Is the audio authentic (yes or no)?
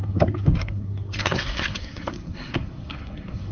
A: no